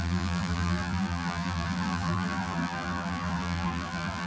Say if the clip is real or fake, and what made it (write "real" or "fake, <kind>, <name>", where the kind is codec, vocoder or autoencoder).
fake, vocoder, BigVGAN v2